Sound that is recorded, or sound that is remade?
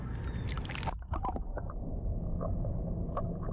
recorded